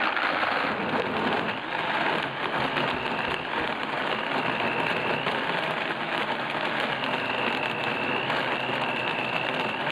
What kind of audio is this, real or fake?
real